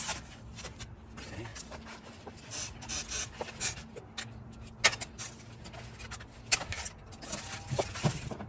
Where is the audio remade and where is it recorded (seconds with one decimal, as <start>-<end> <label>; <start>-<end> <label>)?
0.0-8.5 recorded